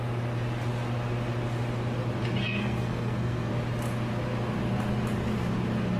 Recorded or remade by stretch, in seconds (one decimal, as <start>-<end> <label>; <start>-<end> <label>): 0.0-2.4 recorded; 2.4-3.5 remade; 3.5-6.0 recorded